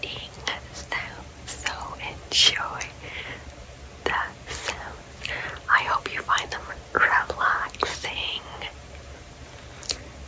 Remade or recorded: recorded